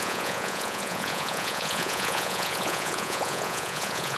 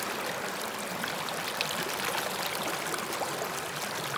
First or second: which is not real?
first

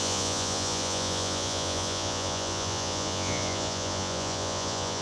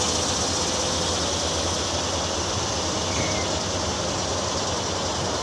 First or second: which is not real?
first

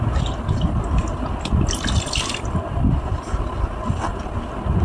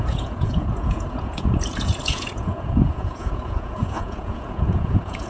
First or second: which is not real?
second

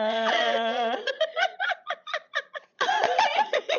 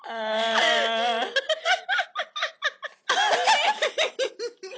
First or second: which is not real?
first